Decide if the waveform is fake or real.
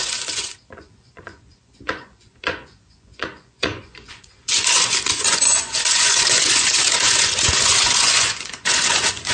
fake